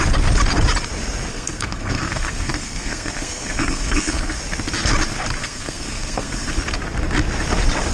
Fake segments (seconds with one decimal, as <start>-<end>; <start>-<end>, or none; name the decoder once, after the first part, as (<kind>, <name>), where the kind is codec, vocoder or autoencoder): 1.3-4.4 (codec, SNAC); 5.4-6.5